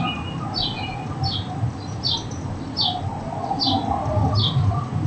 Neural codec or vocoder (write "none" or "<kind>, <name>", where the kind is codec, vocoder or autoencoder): none